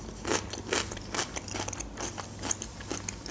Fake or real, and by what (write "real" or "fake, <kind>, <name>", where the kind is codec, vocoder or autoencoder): real